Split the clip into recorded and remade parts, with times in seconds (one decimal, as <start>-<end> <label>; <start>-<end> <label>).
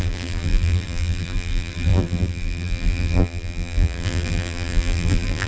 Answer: 0.0-5.5 remade